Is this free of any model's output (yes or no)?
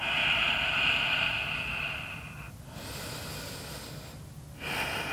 yes